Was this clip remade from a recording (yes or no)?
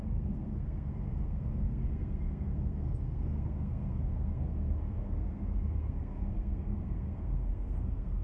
yes